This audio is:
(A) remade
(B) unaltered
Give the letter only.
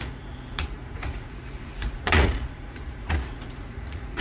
A